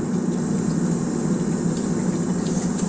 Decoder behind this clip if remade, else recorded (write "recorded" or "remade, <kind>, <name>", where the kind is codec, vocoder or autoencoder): recorded